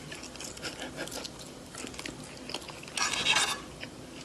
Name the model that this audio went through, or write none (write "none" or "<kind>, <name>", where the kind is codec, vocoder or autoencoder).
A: none